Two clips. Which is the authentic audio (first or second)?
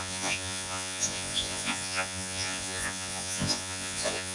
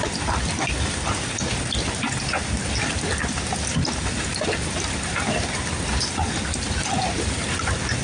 second